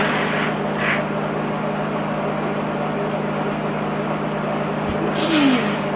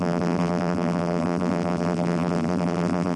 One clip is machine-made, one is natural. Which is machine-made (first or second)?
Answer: second